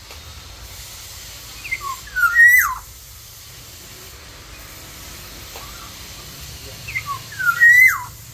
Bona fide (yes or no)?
no